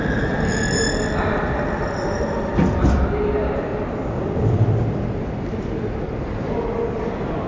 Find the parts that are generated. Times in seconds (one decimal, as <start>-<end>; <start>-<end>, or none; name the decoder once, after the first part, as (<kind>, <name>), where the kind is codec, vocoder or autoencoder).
3.7-4.8 (vocoder, BigVGAN v2)